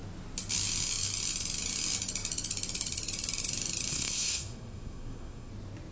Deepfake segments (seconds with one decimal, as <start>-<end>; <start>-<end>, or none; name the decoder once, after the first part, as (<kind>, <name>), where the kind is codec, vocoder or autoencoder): 3.9-5.5 (codec, SNAC)